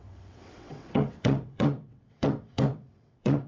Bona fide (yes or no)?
no